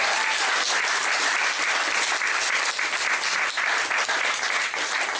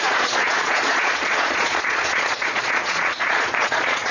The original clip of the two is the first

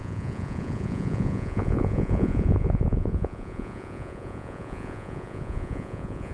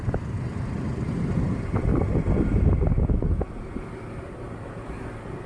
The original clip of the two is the second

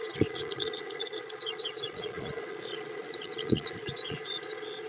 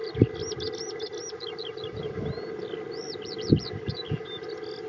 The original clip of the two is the second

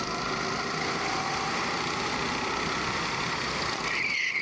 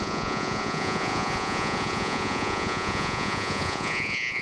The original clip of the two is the first